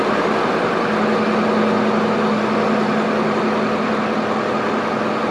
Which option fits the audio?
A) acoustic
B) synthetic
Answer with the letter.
A